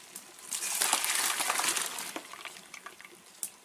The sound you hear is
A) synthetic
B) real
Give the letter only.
B